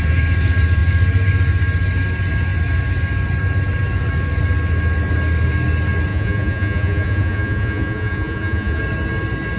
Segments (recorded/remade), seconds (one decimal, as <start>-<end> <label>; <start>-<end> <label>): 0.0-6.1 recorded; 6.1-8.8 remade; 8.8-9.6 recorded